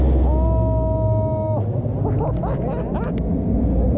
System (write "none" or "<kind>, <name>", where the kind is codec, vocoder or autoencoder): none